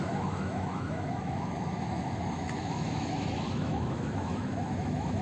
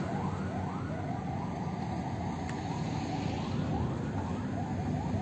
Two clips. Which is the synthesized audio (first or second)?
first